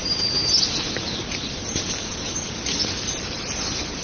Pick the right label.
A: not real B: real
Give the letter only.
B